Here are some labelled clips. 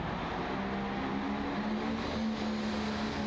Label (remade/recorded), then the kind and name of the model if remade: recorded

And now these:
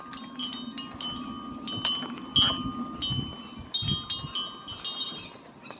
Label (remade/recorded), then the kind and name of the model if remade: recorded